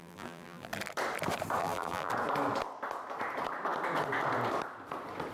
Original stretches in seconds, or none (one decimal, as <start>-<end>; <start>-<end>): 0.7-1.6; 2.1-5.3